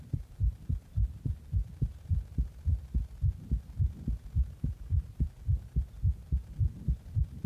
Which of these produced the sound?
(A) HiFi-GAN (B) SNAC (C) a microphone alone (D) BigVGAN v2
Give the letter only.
C